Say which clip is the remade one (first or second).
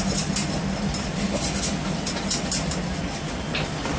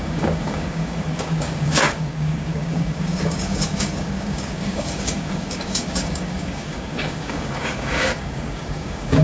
second